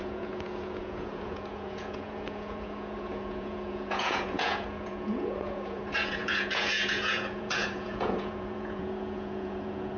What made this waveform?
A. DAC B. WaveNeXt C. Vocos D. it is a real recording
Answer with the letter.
C